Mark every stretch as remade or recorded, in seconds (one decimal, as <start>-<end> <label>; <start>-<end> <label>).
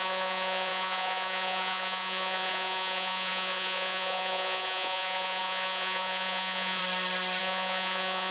0.0-6.8 remade; 6.8-7.4 recorded; 7.4-8.3 remade